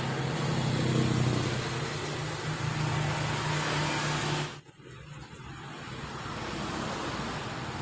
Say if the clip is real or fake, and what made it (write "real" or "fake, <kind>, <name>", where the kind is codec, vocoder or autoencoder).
real